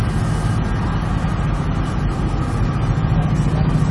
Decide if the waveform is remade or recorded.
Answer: recorded